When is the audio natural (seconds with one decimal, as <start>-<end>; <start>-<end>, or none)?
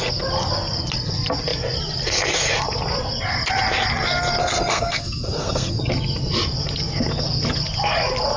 0.0-4.4; 5.8-8.4